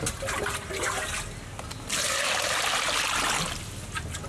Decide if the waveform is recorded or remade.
recorded